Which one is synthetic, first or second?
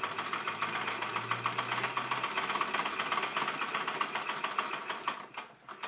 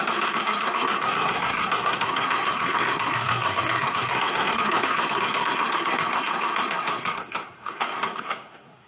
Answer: second